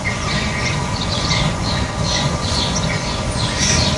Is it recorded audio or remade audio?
remade